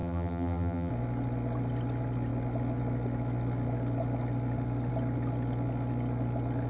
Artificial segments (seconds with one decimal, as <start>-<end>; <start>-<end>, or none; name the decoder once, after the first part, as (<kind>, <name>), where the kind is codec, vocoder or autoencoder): 0.0-0.9 (vocoder, BigVGAN v2)